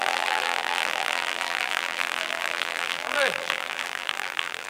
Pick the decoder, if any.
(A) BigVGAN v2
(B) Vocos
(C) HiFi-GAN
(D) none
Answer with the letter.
A